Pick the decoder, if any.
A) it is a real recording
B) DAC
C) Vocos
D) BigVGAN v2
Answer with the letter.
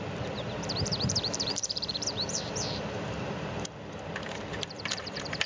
D